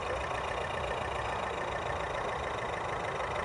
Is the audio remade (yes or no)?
no